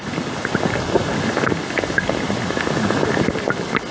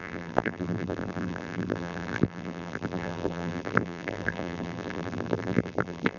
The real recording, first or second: first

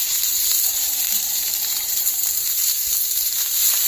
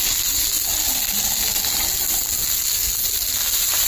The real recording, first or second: second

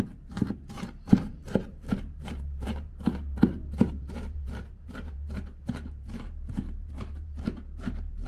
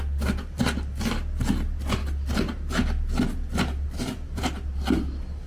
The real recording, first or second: second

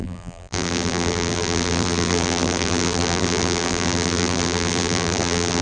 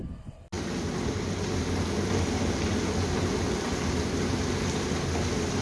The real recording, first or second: second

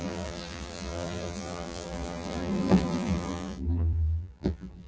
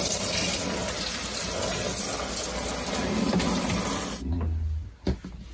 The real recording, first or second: second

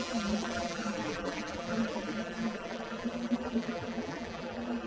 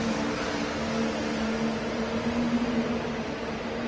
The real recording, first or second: second